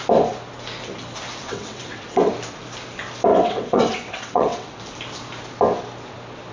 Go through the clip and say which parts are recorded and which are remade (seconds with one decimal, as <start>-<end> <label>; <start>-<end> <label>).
0.0-1.4 recorded; 1.4-2.3 remade; 2.3-3.3 recorded; 3.3-4.8 remade; 4.8-6.5 recorded